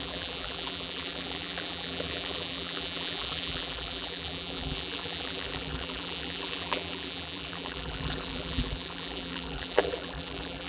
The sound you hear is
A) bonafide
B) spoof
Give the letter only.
B